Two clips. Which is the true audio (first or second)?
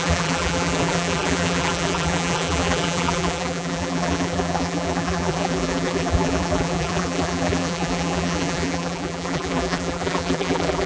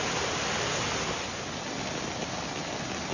second